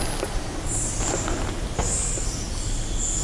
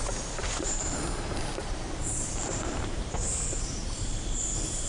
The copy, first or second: second